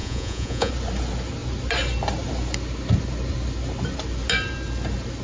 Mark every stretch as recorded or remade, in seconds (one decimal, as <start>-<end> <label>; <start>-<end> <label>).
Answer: 0.0-0.7 remade; 0.7-5.2 recorded